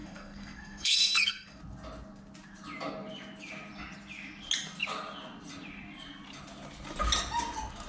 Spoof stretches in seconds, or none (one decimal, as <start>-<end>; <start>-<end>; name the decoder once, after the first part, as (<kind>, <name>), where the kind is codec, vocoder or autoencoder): 0.0-1.6 (codec, SNAC)